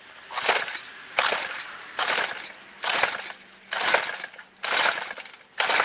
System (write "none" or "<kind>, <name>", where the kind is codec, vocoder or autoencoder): none